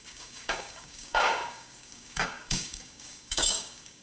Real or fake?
fake